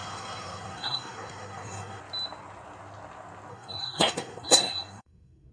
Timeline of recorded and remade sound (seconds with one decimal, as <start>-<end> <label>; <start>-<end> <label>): 0.0-2.0 remade; 2.0-3.5 recorded; 3.5-5.5 remade